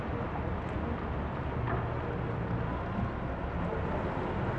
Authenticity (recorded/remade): recorded